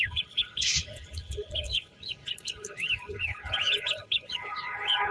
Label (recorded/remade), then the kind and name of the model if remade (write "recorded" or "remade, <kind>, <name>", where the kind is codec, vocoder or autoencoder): remade, codec, HILCodec